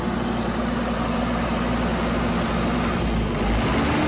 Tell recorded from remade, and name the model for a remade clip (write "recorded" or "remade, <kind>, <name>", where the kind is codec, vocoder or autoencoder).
recorded